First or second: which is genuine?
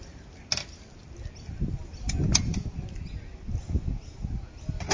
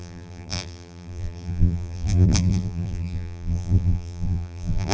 first